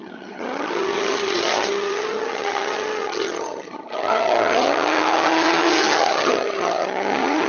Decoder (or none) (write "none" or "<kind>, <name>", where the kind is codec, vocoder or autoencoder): vocoder, HiFi-GAN